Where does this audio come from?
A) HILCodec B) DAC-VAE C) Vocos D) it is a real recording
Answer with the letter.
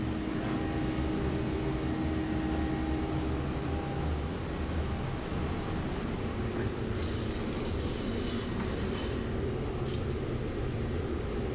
D